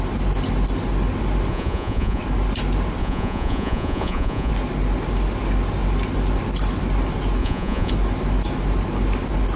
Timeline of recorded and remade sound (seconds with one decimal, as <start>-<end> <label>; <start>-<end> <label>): 0.0-1.5 recorded; 1.5-2.2 remade; 2.2-3.0 recorded; 3.0-4.5 remade; 4.5-7.4 recorded; 7.4-7.9 remade; 7.9-9.6 recorded

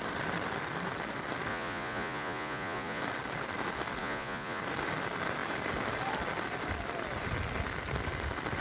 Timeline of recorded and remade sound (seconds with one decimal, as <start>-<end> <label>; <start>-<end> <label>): 0.0-1.5 recorded; 1.5-3.0 remade; 3.0-4.0 recorded; 4.0-4.6 remade; 4.6-8.6 recorded

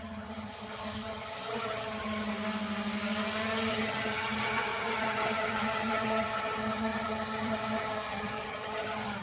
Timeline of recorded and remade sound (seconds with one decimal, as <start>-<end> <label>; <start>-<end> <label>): 0.0-2.3 remade; 2.3-3.7 recorded; 3.7-9.2 remade

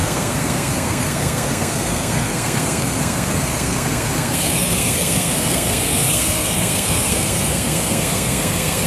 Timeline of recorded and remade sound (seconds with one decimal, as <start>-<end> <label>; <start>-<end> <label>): 0.0-8.9 remade